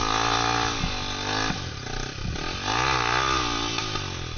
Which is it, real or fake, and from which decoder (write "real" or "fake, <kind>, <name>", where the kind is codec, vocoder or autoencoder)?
real